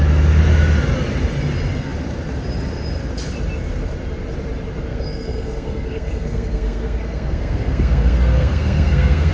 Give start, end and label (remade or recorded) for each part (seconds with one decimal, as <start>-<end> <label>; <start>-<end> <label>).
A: 0.0-4.9 recorded; 4.9-9.3 remade